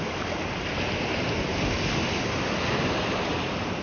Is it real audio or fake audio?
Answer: real